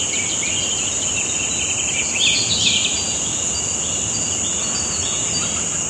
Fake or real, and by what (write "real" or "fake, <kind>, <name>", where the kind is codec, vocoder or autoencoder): real